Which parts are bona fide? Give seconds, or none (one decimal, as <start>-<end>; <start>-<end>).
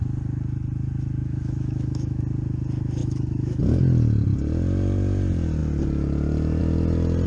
0.0-1.2; 2.2-3.0; 3.6-7.3